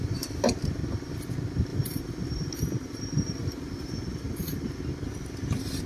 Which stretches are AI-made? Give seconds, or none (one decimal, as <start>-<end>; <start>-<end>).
1.7-4.8